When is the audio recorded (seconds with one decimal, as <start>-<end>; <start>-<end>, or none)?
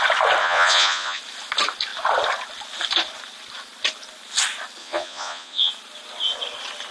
0.0-0.4; 1.2-4.8; 5.7-6.9